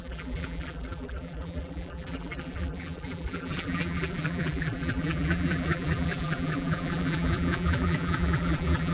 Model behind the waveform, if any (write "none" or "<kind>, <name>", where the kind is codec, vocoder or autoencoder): vocoder, BigVGAN v2